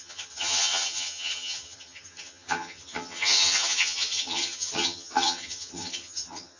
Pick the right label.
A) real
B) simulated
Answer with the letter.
B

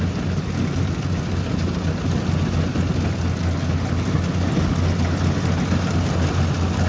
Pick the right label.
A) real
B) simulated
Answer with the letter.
A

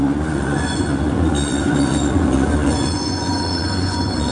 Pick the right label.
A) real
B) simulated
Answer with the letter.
B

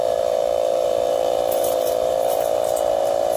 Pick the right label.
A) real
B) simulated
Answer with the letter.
B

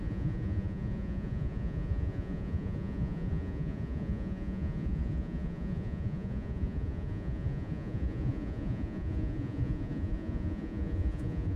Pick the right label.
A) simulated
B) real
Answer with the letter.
A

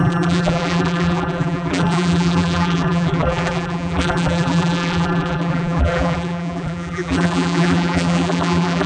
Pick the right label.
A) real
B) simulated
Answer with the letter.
B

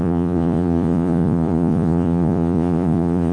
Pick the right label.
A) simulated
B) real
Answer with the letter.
A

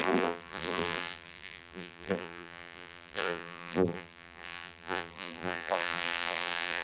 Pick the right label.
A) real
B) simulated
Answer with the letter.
B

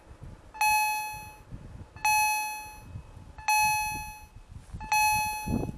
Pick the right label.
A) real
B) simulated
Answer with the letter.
A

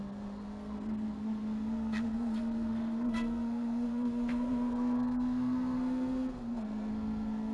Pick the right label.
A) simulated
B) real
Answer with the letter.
A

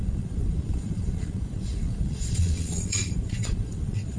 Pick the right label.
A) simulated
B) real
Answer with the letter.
A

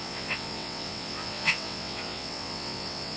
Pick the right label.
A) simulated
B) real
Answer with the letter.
A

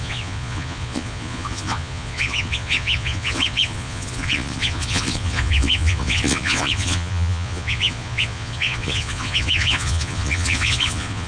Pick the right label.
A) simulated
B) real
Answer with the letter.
A